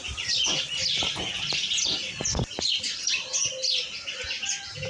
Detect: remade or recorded recorded